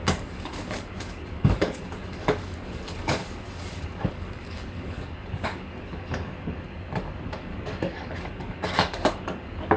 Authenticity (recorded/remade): remade